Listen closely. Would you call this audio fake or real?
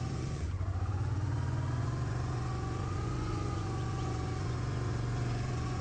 fake